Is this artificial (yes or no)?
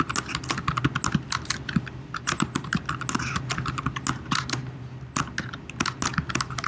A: no